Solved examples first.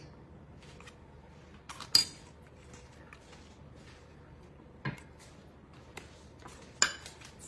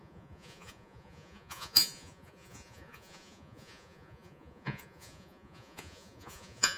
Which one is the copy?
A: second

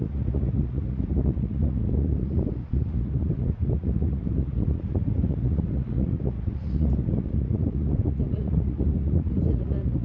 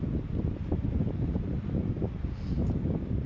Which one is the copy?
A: first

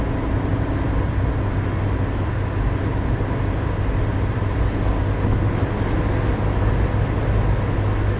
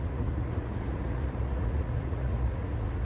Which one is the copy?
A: second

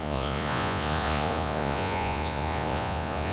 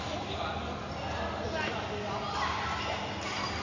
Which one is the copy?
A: first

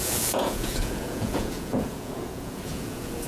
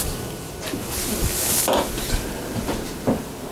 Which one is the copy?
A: first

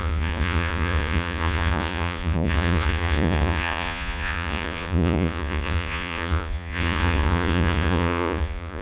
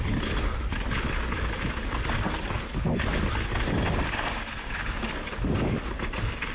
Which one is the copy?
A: first